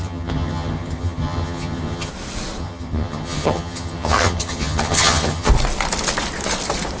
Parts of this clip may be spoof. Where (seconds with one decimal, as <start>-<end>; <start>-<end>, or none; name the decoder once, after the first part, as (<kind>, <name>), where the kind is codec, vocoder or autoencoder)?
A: 0.0-2.1 (vocoder, HiFi-GAN); 2.6-5.5